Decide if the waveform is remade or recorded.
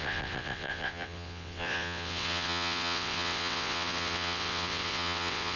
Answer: remade